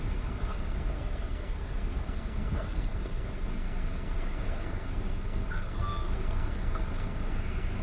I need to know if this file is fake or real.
fake